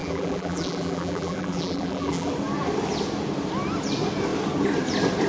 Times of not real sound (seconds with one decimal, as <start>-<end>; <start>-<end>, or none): 0.0-2.3